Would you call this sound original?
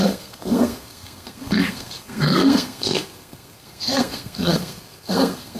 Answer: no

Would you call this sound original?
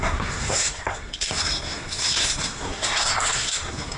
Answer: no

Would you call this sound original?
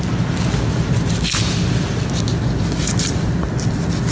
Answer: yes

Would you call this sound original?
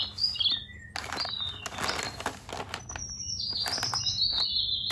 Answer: yes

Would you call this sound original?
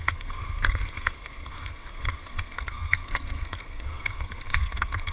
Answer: no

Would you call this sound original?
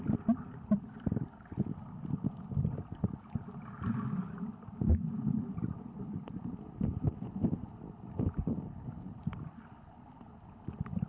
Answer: yes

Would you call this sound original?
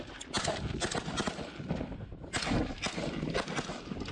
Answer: yes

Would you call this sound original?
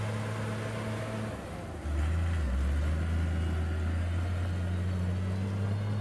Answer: yes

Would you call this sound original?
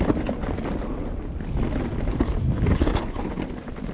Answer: yes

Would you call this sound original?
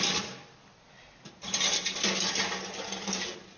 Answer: yes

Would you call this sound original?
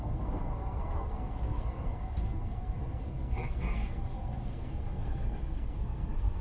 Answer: no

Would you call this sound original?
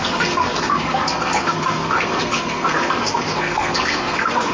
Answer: no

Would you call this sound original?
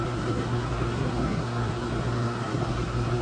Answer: no